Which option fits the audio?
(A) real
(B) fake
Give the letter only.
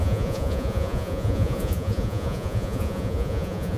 B